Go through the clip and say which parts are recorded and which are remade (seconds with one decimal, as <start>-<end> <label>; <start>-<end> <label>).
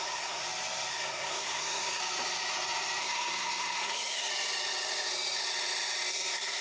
0.0-0.4 remade; 0.4-0.9 recorded; 0.9-2.0 remade; 2.0-3.0 recorded; 3.0-4.3 remade; 4.3-6.1 recorded; 6.1-6.6 remade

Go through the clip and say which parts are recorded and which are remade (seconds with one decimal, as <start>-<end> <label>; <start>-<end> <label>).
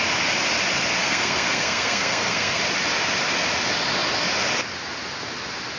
0.0-1.0 recorded; 1.0-2.6 remade; 2.6-5.8 recorded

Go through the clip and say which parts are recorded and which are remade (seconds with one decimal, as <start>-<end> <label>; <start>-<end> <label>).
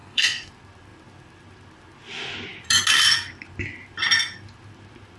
0.0-0.5 remade; 0.5-5.2 recorded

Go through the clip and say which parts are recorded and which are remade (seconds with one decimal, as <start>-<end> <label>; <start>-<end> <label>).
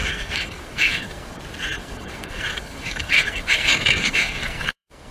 0.0-1.4 remade; 1.4-1.8 recorded; 1.8-5.1 remade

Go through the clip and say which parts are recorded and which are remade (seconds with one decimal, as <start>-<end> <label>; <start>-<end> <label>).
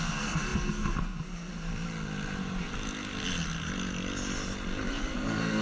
0.0-1.5 remade; 1.5-4.9 recorded; 4.9-5.6 remade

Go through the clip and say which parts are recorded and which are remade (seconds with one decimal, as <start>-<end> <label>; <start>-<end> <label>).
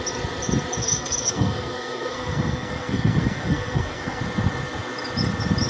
0.0-0.8 recorded; 0.8-4.2 remade; 4.2-5.7 recorded